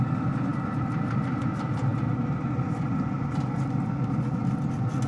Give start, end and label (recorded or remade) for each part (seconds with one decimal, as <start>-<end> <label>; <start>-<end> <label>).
0.0-5.1 recorded